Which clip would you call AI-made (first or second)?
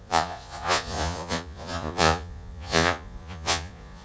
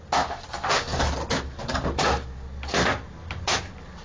first